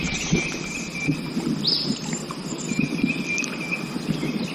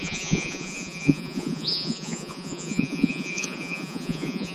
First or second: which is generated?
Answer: second